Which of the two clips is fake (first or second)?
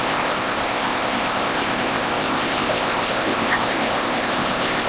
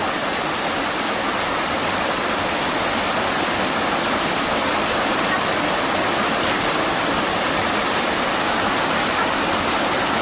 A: first